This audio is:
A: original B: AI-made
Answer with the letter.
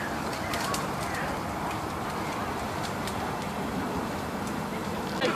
B